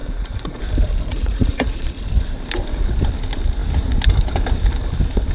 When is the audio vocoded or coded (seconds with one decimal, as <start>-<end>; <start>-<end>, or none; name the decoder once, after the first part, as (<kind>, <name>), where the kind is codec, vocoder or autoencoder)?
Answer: 0.0-0.6 (vocoder, Vocos); 1.1-2.0

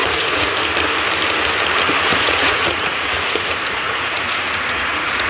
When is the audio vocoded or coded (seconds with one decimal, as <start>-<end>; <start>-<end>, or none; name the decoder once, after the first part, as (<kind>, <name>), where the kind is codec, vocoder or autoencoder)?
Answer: 0.0-0.5 (vocoder, Vocos); 2.1-5.3

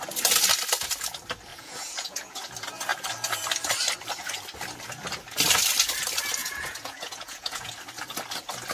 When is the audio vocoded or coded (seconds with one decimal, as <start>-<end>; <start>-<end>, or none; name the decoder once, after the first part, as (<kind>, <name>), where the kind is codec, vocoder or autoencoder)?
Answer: 1.5-2.5 (vocoder, Vocos); 6.4-7.7

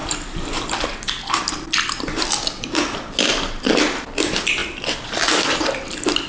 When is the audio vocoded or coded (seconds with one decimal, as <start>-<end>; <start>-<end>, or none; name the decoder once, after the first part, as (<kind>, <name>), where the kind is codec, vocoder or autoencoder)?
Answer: none

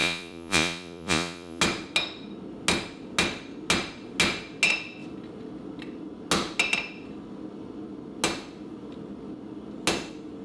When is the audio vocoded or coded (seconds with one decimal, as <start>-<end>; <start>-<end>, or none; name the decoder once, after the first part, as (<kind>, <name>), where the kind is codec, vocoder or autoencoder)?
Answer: 0.0-1.6 (vocoder, Vocos)

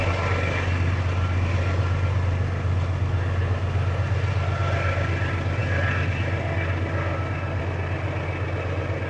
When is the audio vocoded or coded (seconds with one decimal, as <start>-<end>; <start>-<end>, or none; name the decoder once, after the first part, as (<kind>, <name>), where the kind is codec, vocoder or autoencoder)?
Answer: none

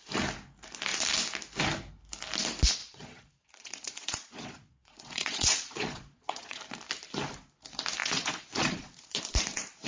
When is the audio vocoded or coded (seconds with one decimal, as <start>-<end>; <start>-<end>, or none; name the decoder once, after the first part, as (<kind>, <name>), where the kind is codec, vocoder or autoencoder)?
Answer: 2.8-6.6 (vocoder, Vocos); 8.0-9.2

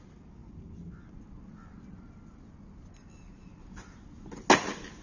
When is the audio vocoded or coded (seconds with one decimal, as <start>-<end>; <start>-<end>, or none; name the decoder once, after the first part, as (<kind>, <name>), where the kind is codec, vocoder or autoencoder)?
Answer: none